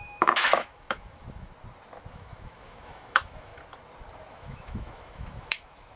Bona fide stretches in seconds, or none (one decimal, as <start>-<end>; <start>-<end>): 1.5-2.1; 3.5-4.3